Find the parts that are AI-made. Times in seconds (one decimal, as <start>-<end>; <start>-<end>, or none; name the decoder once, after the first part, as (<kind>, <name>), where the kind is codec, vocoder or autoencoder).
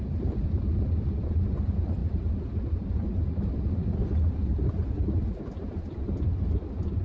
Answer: none